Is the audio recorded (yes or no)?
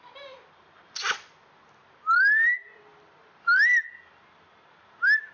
yes